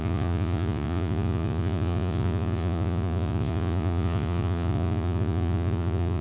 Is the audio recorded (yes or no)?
no